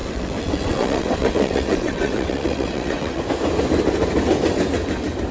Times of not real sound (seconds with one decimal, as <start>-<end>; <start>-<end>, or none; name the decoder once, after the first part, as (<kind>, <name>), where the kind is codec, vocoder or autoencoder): 0.0-3.2 (vocoder, WaveNeXt)